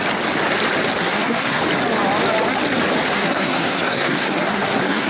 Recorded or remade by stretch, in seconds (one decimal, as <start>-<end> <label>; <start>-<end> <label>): 0.0-1.0 recorded; 1.0-1.6 remade; 1.6-3.1 recorded; 3.1-5.1 remade